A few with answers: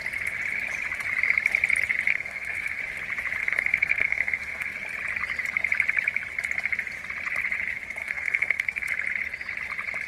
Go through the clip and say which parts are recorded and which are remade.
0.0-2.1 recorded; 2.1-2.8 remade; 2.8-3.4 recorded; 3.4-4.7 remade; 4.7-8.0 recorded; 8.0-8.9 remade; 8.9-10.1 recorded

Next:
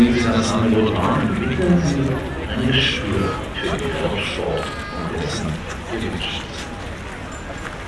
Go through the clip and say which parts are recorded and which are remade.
0.0-5.0 recorded; 5.0-6.2 remade; 6.2-7.9 recorded

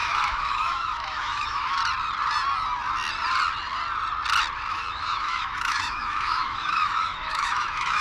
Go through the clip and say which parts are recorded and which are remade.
0.0-1.8 remade; 1.8-4.7 recorded; 4.7-8.0 remade

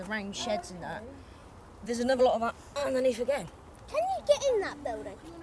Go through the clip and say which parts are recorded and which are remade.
0.0-1.4 recorded; 1.4-2.2 remade; 2.2-5.4 recorded

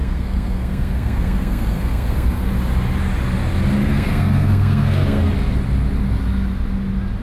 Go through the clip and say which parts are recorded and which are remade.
0.0-2.5 remade; 2.5-3.8 recorded; 3.8-5.3 remade; 5.3-7.2 recorded

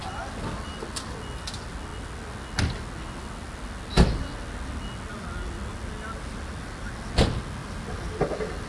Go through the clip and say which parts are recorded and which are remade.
0.0-5.1 recorded; 5.1-6.9 remade; 6.9-7.6 recorded; 7.6-8.7 remade

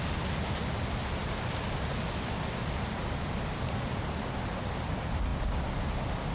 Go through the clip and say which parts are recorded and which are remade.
0.0-6.3 recorded